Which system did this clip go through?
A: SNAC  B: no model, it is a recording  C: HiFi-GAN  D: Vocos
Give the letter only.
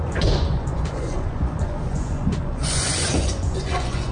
D